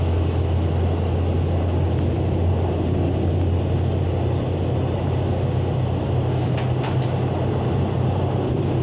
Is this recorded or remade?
recorded